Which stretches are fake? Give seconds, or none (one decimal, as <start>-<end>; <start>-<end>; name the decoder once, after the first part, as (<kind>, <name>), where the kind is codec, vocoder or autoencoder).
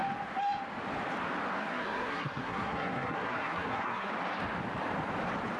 1.6-4.1 (codec, SNAC)